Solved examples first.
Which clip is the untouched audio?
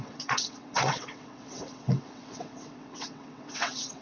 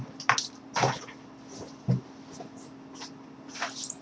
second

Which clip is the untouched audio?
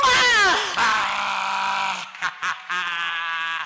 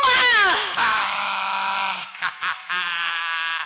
first